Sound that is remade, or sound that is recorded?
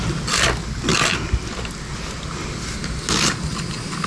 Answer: recorded